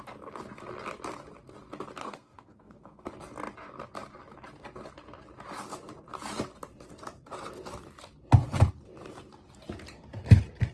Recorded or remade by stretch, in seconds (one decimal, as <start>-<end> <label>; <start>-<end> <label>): 0.0-2.0 recorded; 2.0-3.1 remade; 3.1-10.7 recorded